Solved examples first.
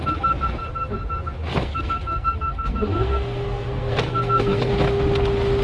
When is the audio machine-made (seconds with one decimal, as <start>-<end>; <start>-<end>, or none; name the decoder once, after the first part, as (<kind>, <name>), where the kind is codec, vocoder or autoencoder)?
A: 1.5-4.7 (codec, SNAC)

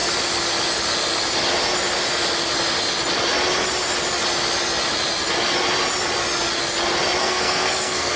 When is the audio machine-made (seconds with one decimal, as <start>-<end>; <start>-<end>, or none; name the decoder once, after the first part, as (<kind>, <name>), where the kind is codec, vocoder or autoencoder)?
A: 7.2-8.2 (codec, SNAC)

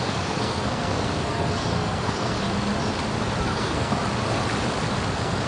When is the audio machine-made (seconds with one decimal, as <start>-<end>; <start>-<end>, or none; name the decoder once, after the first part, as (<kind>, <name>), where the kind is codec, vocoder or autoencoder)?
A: 0.0-2.4 (codec, SNAC); 3.4-3.9; 5.1-5.5